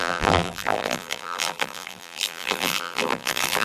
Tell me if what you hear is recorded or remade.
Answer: remade